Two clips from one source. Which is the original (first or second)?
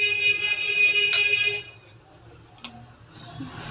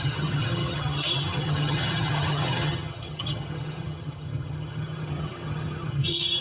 first